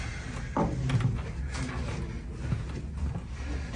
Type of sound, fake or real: real